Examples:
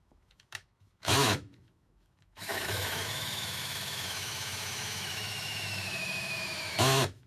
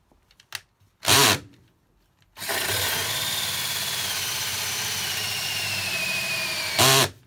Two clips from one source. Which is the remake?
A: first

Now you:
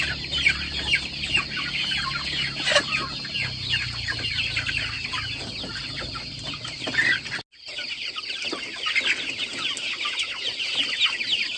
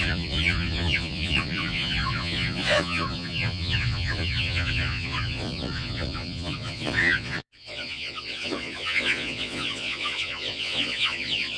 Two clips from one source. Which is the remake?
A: second